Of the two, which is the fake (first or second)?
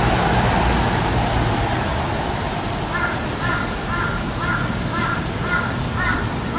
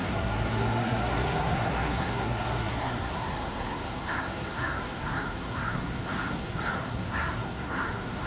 second